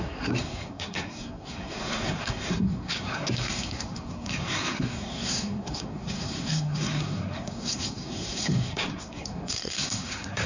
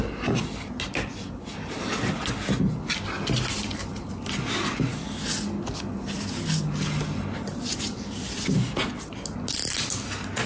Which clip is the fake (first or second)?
first